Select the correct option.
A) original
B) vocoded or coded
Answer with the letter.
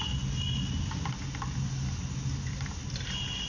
A